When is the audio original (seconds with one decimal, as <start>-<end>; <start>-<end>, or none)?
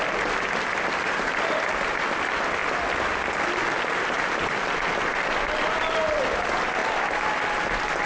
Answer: 0.0-8.1